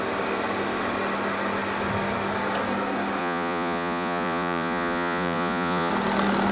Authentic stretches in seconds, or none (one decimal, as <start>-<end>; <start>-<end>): 0.0-3.2; 5.9-6.5